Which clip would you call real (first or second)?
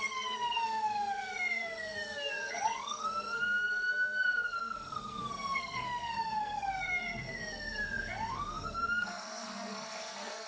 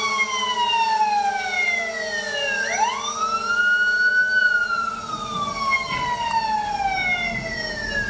second